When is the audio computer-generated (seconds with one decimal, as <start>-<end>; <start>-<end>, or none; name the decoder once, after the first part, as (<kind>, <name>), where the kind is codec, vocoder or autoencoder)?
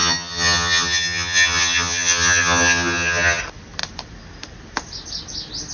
0.0-3.4 (vocoder, HiFi-GAN)